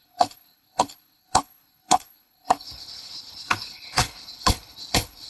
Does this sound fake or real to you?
fake